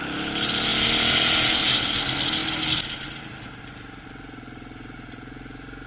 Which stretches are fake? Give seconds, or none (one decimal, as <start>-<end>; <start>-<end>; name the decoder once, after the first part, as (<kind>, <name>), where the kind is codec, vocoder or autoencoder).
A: none

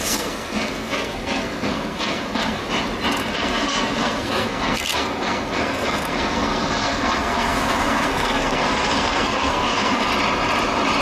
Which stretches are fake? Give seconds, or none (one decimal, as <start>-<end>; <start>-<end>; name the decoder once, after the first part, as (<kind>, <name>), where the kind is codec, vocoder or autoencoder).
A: 0.0-2.6 (codec, SNAC); 3.3-10.1

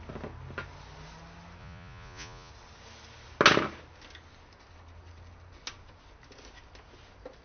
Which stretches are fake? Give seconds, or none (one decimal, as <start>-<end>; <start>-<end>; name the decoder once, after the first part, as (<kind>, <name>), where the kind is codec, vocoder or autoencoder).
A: 1.6-2.5 (vocoder, Vocos)

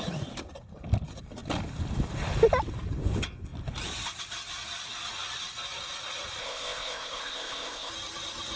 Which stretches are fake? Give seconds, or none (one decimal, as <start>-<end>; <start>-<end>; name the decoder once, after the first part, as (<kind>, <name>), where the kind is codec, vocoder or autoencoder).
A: 6.4-7.9 (codec, ZipCodec)

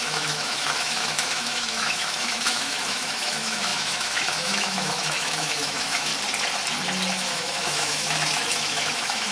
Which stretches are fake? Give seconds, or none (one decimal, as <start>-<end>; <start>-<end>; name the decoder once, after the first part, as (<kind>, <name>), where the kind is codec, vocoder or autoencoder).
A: 0.0-6.1 (autoencoder, DAC-VAE); 7.1-9.3

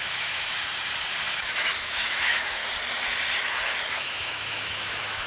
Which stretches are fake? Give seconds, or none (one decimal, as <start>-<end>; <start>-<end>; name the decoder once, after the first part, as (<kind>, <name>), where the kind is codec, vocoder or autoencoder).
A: 0.0-0.5 (autoencoder, DAC-VAE); 1.3-2.6; 3.9-5.3

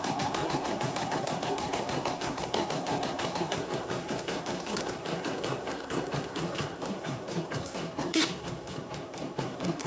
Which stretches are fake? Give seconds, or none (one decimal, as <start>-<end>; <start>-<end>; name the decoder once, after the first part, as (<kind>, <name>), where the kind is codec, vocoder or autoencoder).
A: 0.0-9.9 (codec, SNAC)